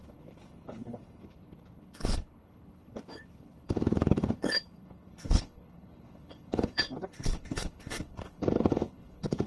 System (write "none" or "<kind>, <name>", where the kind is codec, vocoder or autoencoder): codec, HILCodec